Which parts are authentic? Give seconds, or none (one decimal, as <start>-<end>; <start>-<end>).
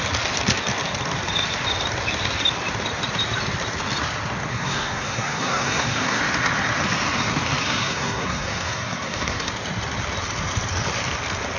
0.0-4.5; 6.2-7.6; 9.5-11.6